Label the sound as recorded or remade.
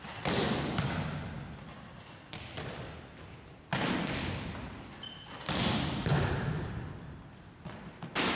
recorded